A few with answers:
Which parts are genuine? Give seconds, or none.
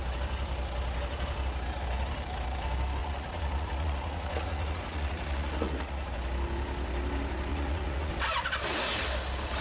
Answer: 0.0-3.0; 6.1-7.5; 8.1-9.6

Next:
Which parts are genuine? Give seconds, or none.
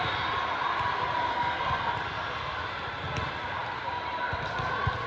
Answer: 0.0-1.3; 1.9-5.1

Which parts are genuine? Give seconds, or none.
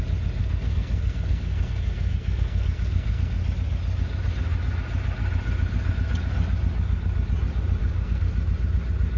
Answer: 0.0-0.4; 3.4-7.8; 8.3-9.2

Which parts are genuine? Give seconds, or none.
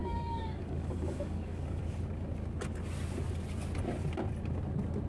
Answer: 1.8-5.1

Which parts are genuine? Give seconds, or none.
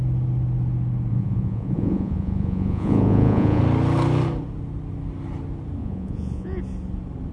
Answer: 0.0-1.1; 3.6-5.8; 6.6-7.3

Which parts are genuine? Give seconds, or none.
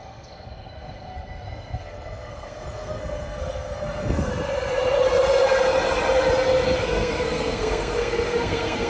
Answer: 4.3-6.8